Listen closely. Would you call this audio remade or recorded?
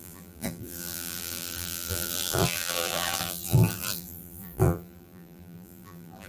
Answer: remade